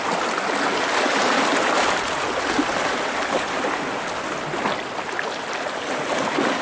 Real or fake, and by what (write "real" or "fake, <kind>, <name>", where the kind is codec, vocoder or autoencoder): real